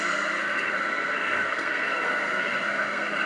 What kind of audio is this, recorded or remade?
remade